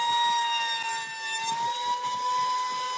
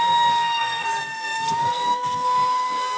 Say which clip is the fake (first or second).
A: second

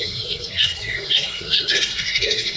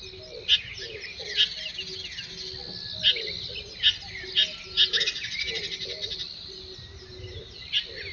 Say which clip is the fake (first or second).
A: first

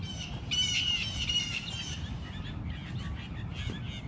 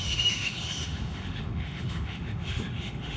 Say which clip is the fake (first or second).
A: second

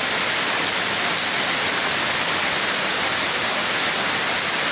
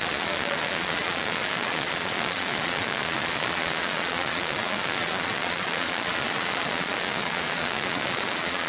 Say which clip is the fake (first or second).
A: second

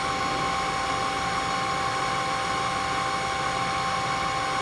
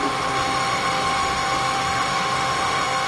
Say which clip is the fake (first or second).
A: second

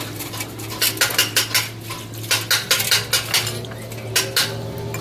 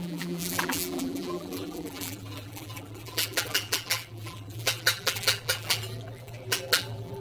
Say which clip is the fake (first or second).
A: second